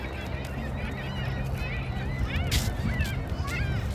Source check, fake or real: real